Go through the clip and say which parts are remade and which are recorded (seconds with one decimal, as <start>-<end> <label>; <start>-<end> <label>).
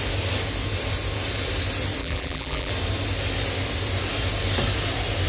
0.0-2.0 recorded; 2.0-2.7 remade; 2.7-5.3 recorded